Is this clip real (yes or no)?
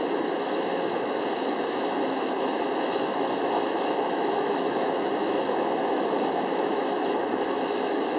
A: no